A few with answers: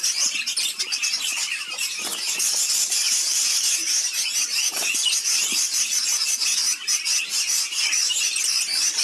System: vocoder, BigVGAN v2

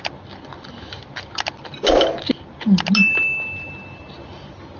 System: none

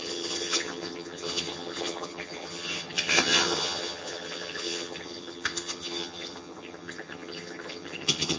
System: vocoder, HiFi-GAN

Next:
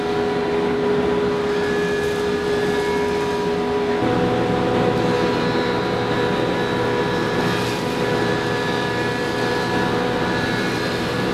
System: none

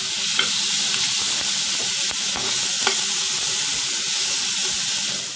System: none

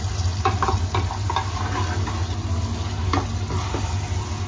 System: none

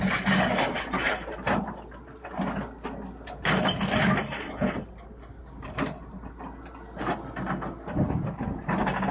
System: none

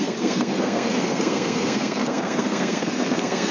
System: codec, SNAC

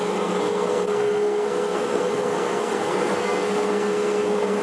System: codec, SNAC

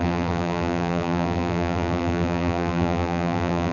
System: vocoder, BigVGAN v2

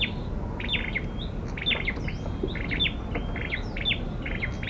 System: none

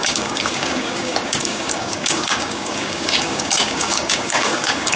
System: codec, DAC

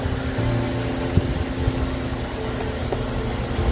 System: none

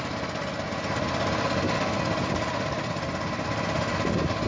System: none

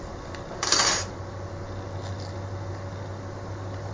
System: none